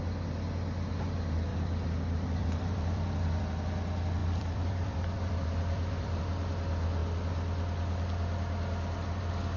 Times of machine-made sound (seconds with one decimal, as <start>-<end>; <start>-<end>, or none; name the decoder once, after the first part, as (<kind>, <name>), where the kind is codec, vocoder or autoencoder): 1.5-3.4 (vocoder, BigVGAN v2); 4.2-6.2